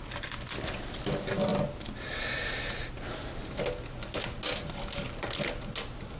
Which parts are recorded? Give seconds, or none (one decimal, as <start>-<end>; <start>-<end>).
0.0-6.2